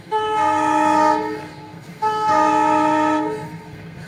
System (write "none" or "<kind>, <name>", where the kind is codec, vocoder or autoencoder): codec, SNAC